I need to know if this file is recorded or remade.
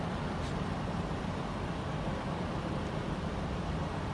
remade